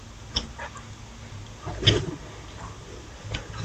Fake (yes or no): no